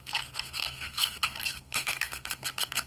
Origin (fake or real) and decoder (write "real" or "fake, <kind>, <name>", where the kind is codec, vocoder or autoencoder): fake, codec, SNAC